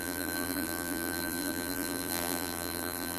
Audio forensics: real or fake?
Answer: fake